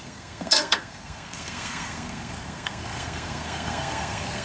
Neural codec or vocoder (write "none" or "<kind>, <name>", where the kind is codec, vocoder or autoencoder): codec, SNAC